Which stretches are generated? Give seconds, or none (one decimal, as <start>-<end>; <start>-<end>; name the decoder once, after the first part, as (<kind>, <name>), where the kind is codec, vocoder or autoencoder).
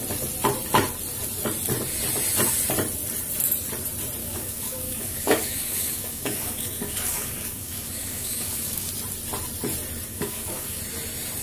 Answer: 4.2-8.9 (codec, DAC); 10.1-10.8